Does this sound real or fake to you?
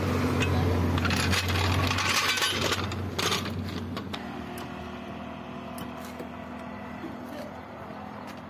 real